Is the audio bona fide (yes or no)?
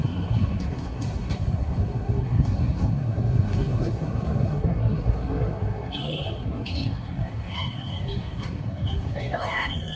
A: no